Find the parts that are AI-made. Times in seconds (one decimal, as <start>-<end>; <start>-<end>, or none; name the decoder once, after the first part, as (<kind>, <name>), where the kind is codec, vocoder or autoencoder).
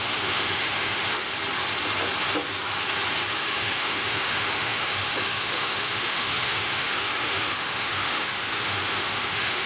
0.0-1.3 (autoencoder, DAC-VAE); 3.3-9.7